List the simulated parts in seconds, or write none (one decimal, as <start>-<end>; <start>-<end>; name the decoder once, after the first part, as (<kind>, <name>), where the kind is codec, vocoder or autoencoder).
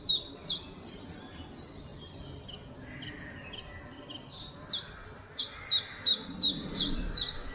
none